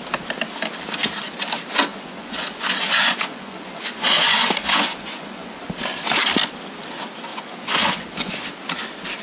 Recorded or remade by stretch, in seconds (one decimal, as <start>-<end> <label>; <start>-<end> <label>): 0.0-1.9 recorded; 1.9-5.6 remade; 5.6-7.3 recorded; 7.3-8.5 remade; 8.5-9.2 recorded